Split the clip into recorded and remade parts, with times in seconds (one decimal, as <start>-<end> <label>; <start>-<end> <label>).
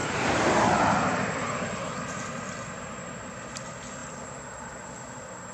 0.0-1.7 remade; 1.7-5.5 recorded